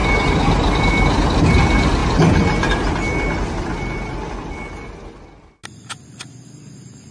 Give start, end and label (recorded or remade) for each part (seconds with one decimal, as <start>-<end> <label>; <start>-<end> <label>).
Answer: 0.0-7.1 recorded